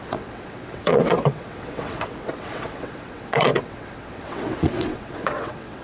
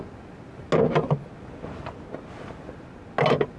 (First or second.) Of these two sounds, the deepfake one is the first